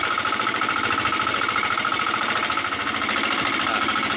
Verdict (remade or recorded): recorded